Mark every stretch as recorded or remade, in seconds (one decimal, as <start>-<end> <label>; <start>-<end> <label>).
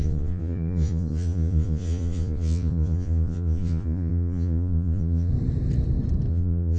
0.0-5.3 remade; 5.3-6.3 recorded; 6.3-6.8 remade